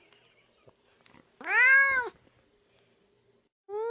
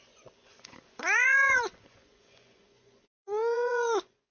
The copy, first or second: second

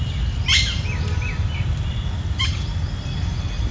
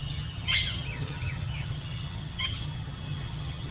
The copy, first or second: second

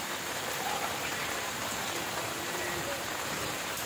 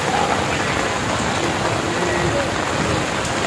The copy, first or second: first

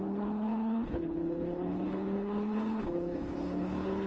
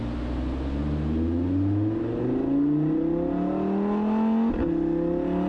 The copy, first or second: first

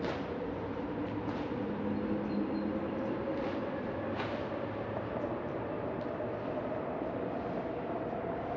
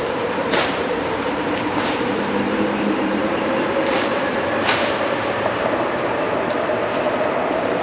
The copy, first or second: second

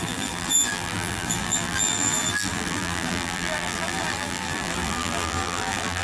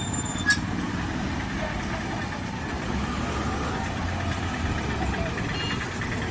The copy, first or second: first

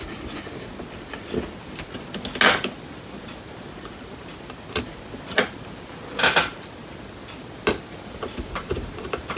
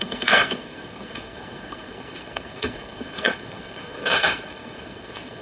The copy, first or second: second